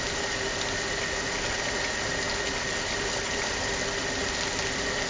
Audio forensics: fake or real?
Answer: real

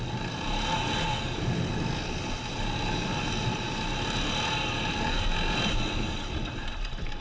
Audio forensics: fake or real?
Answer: real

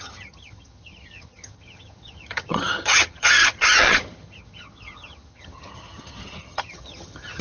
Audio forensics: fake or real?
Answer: fake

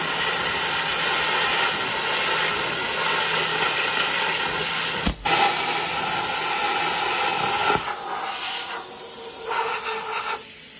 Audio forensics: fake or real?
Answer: real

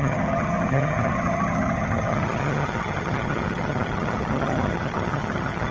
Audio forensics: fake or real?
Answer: fake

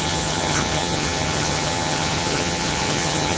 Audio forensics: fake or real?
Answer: fake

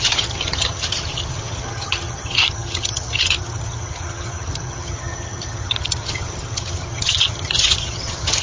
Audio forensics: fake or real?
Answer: fake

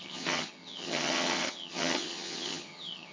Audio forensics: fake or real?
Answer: fake